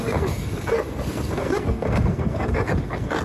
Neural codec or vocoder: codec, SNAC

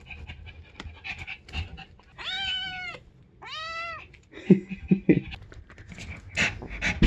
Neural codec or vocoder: none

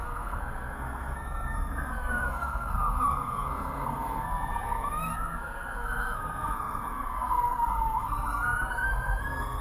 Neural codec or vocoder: codec, SNAC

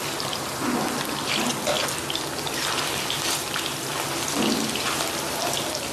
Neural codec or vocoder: none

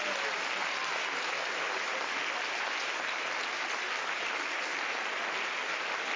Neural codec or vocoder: none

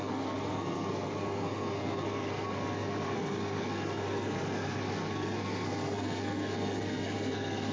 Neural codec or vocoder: codec, SNAC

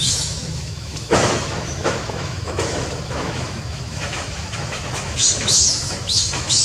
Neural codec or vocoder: autoencoder, DAC-VAE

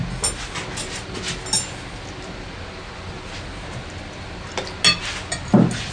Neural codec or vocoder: none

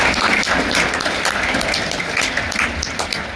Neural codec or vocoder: none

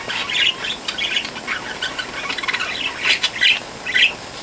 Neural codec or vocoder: none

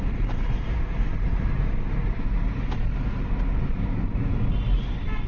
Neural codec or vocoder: none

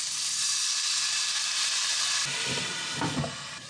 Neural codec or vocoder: none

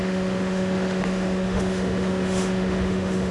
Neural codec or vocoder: autoencoder, DAC-VAE